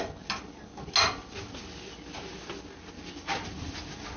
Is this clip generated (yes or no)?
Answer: no